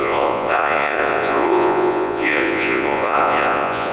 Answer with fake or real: fake